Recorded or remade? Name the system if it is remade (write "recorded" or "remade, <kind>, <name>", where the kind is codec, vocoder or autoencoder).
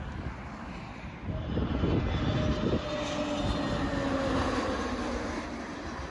recorded